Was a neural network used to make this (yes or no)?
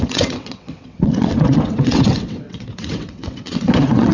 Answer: yes